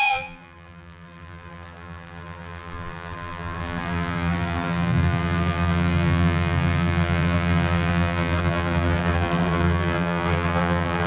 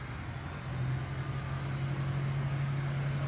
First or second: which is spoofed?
first